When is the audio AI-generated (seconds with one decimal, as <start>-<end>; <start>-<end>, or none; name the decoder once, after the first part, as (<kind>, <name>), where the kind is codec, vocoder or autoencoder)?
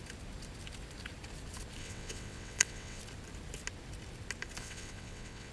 1.8-3.0 (vocoder, WaveNeXt); 4.6-5.5